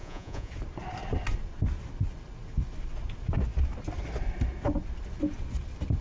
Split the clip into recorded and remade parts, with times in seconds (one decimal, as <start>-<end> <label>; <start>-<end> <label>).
0.0-0.5 remade; 0.5-6.0 recorded

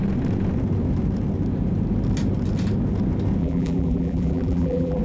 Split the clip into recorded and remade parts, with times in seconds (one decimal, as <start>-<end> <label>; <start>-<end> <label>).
0.0-3.4 recorded; 3.4-5.0 remade

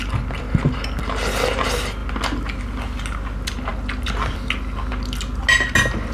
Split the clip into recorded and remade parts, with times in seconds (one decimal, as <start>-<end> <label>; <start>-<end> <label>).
0.0-6.1 recorded

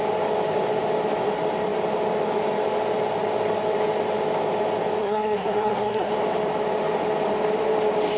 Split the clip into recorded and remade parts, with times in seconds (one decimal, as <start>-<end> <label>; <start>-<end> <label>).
0.0-5.0 recorded; 5.0-6.1 remade; 6.1-8.2 recorded

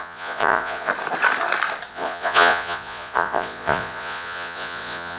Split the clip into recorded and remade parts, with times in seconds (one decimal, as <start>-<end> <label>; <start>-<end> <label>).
0.0-0.9 remade; 0.9-1.9 recorded; 1.9-5.2 remade